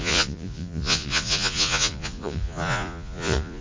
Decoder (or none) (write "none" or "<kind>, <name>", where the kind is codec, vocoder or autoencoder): vocoder, Vocos